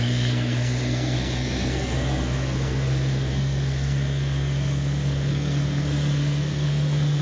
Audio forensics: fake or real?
fake